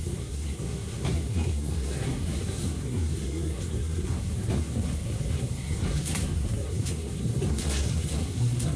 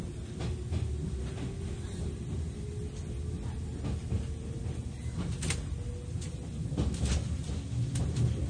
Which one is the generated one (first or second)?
first